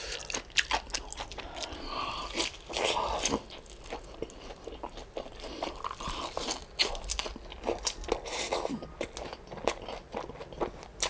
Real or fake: real